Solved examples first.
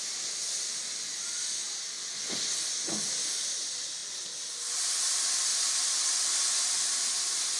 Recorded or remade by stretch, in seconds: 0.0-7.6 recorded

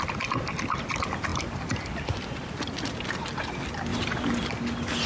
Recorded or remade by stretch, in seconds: 0.0-5.1 recorded